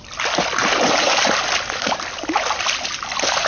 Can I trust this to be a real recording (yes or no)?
yes